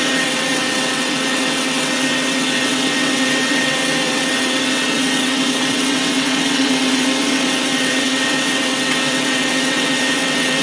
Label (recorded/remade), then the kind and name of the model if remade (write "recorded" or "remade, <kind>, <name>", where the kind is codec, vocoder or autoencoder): remade, vocoder, WaveNeXt